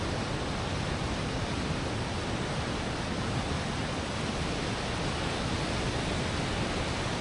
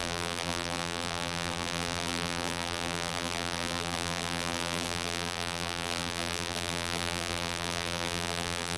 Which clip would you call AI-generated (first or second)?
second